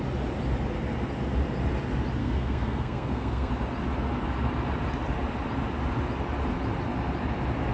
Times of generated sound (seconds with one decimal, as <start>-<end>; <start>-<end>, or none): 2.2-3.5